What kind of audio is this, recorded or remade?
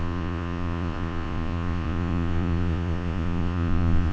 remade